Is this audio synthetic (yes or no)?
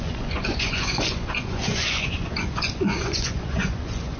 yes